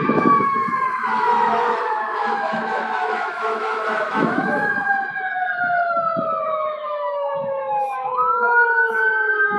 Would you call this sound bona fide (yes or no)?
no